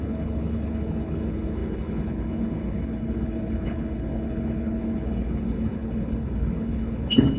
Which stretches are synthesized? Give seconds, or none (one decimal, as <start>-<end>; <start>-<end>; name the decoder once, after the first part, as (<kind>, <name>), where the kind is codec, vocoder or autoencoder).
0.0-7.4 (codec, HILCodec)